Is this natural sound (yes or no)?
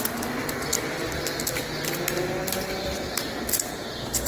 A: yes